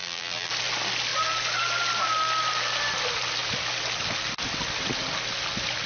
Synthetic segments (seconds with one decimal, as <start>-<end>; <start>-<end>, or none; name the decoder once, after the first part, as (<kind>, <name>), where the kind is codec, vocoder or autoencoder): 0.0-0.5 (vocoder, BigVGAN v2)